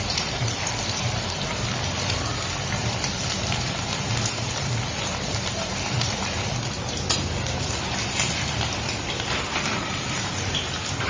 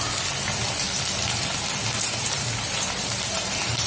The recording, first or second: second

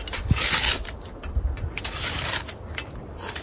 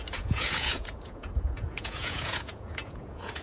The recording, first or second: first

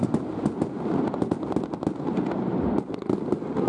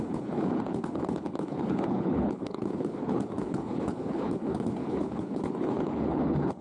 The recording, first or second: first